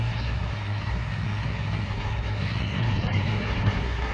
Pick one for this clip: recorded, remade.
remade